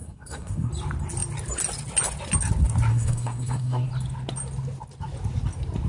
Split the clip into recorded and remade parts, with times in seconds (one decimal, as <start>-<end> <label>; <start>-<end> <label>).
0.0-0.7 remade; 0.7-2.9 recorded; 2.9-3.9 remade; 3.9-5.9 recorded